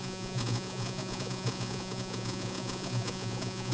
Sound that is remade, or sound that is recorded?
remade